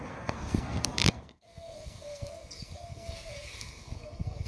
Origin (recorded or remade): remade